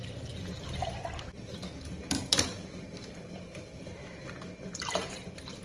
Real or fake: fake